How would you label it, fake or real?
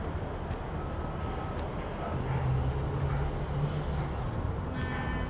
real